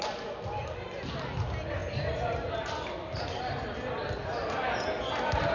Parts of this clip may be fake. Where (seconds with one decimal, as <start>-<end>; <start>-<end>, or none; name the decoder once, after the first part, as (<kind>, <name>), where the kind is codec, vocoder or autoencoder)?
none